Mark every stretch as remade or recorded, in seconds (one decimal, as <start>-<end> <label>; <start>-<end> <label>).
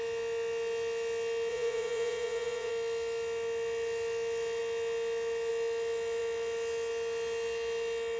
0.0-1.5 recorded; 1.5-2.7 remade; 2.7-8.2 recorded